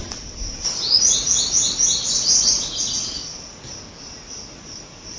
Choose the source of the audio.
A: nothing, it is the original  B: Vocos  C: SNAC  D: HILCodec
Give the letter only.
A